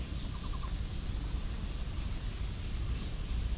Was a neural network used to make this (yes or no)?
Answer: no